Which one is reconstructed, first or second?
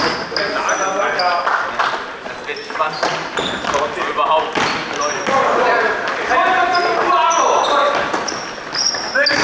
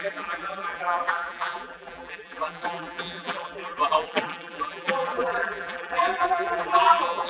second